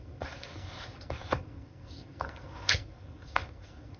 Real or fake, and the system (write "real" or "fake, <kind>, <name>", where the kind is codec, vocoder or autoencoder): fake, codec, SNAC